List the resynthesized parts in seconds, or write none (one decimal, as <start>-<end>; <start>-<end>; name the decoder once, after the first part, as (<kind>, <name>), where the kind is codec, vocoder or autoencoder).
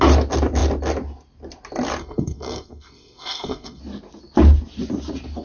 2.0-3.8 (codec, SNAC)